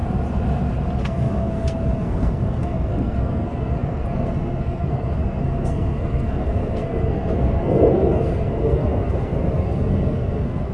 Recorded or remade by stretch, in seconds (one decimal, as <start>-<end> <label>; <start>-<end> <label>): 0.0-1.0 recorded; 1.0-10.7 remade